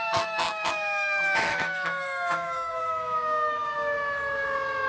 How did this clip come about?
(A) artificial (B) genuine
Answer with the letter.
A